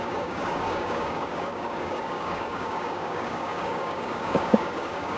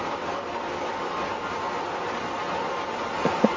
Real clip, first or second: second